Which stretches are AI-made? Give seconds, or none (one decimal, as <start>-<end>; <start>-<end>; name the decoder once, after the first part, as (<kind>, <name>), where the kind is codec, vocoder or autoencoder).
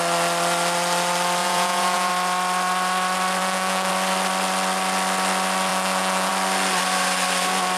1.4-2.1 (vocoder, Vocos); 3.4-3.9; 5.7-6.3